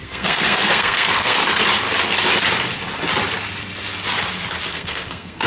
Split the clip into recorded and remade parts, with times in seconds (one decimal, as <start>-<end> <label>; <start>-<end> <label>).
0.0-1.4 remade; 1.4-4.7 recorded; 4.7-5.5 remade